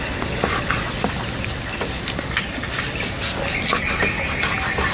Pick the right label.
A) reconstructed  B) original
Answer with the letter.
B